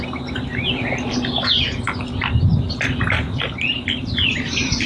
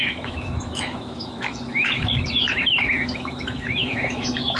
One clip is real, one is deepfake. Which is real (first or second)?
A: first